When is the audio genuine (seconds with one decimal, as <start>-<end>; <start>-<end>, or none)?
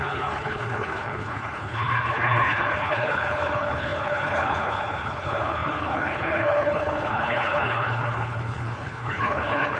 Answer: none